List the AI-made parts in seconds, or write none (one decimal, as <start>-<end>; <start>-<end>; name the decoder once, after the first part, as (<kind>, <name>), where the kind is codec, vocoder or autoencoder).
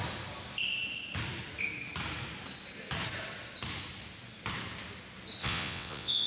5.4-6.3 (vocoder, WaveNeXt)